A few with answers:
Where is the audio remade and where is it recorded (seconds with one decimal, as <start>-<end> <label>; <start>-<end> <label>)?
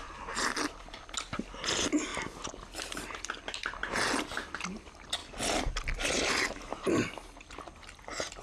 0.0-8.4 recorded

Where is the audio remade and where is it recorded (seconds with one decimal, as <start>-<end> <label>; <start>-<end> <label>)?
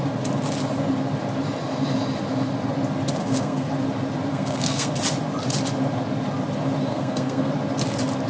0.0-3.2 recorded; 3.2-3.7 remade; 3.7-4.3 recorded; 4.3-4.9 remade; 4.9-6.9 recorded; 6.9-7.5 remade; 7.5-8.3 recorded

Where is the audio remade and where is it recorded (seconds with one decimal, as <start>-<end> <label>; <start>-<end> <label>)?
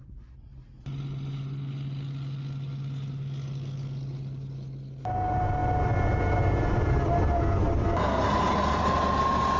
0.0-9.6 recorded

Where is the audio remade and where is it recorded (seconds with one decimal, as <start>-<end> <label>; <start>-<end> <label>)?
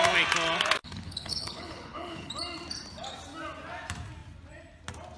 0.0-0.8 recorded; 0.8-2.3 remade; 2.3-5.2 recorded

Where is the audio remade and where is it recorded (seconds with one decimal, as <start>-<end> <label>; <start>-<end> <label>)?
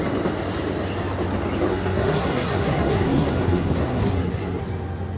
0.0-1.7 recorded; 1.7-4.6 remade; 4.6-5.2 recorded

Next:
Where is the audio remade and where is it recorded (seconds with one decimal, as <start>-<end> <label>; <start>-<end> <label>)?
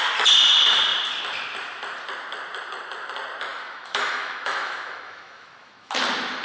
0.0-3.5 recorded; 3.5-5.9 remade; 5.9-6.4 recorded